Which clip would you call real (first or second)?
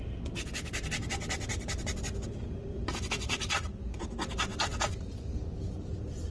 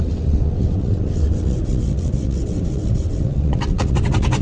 first